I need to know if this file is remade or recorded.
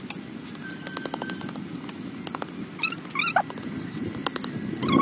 recorded